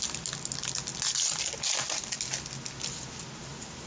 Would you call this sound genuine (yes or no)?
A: yes